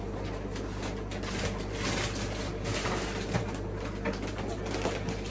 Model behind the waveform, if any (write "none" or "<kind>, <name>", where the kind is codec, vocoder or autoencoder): none